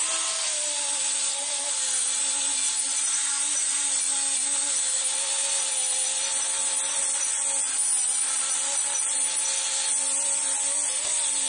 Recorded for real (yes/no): yes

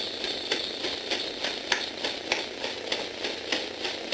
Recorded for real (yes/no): yes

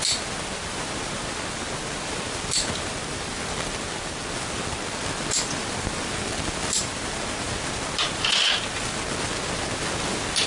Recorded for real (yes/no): yes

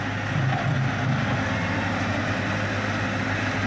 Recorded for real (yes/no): yes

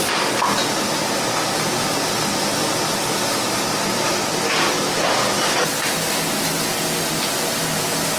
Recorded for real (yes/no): yes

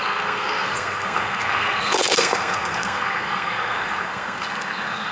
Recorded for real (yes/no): no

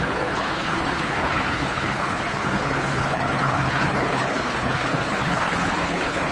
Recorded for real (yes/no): no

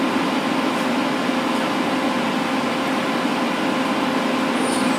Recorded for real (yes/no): yes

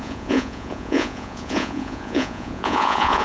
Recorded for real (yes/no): no